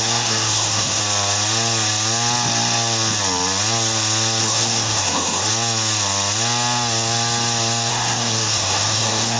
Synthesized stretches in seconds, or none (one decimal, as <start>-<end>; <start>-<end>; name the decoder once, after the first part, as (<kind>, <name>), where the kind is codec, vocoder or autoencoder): 0.0-1.0 (codec, SNAC); 4.4-5.5; 7.9-9.4